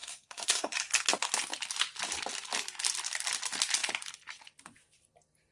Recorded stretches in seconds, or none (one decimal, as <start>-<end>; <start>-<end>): 0.8-5.5